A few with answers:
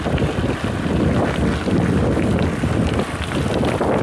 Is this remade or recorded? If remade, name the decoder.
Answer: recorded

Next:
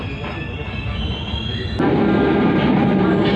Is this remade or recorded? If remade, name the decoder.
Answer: recorded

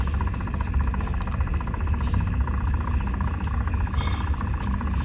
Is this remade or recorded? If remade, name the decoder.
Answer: recorded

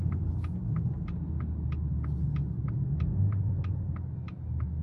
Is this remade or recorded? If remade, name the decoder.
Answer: recorded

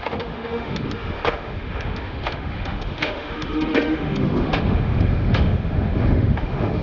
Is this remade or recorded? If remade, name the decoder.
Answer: remade, autoencoder, DAC-VAE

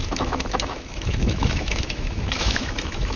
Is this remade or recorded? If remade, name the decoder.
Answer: remade, autoencoder, DAC-VAE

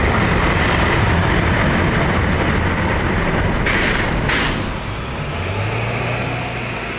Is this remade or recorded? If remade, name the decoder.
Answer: recorded